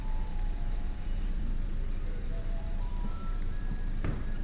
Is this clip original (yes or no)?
no